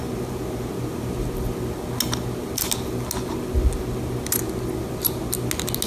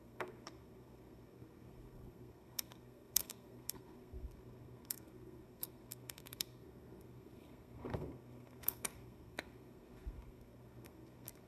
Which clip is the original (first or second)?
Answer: first